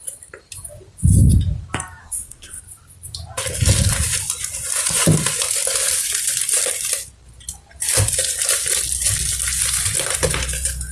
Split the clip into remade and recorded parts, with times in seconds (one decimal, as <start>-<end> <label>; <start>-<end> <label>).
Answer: 0.0-2.0 recorded; 2.0-2.6 remade; 2.6-10.9 recorded

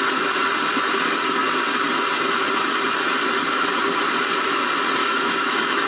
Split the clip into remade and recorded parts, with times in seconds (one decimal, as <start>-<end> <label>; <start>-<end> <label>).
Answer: 0.0-5.0 recorded; 5.0-5.9 remade

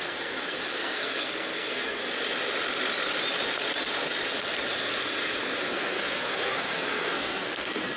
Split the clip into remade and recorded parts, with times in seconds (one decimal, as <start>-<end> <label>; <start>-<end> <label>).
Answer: 0.0-2.0 remade; 2.0-5.7 recorded; 5.7-8.0 remade

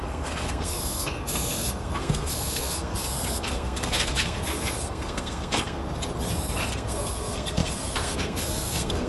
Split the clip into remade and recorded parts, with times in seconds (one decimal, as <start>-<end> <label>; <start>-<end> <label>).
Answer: 0.0-5.8 remade; 5.8-6.7 recorded; 6.7-9.1 remade

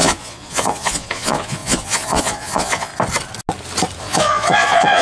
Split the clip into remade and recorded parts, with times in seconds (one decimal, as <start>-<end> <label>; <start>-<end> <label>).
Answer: 0.0-2.9 remade; 2.9-4.0 recorded; 4.0-5.0 remade

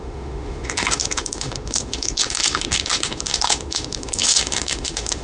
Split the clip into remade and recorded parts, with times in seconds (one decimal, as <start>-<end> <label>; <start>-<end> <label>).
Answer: 0.0-5.2 remade

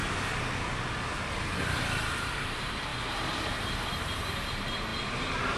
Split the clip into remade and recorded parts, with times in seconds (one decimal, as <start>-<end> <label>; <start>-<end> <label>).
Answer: 0.0-1.8 recorded; 1.8-5.6 remade